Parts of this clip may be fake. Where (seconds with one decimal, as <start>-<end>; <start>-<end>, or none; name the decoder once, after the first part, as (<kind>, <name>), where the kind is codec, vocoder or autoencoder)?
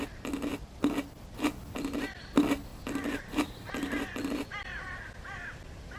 none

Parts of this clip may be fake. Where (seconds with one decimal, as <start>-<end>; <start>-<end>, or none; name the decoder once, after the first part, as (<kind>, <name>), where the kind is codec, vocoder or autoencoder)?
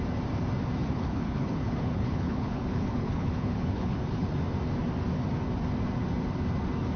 0.8-4.3 (codec, HILCodec)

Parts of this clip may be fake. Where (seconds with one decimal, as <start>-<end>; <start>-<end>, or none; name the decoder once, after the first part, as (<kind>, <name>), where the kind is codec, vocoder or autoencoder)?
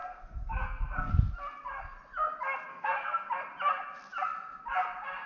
0.0-1.1 (codec, SNAC); 2.7-3.3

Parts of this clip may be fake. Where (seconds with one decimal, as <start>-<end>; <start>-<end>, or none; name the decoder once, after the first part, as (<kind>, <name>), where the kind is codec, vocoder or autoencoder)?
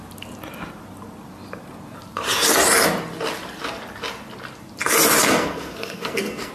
5.2-6.5 (codec, SNAC)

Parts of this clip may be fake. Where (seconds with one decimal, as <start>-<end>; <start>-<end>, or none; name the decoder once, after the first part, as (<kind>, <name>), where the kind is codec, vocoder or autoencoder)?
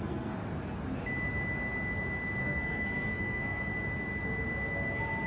0.0-0.4 (codec, SNAC); 2.4-3.7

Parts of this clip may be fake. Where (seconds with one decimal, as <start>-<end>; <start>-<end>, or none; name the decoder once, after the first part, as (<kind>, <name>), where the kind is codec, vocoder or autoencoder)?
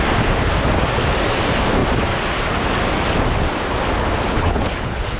4.3-5.2 (codec, HILCodec)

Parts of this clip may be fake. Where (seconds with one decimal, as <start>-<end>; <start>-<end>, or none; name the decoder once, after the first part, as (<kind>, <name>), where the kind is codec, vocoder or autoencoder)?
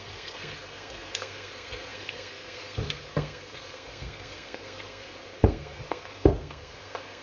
0.0-7.2 (codec, SNAC)